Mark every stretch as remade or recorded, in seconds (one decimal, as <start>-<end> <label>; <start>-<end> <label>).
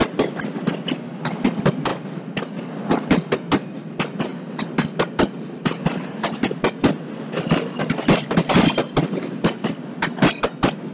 0.0-10.9 recorded